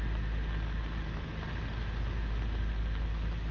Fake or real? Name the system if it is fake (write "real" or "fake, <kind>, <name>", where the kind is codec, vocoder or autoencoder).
real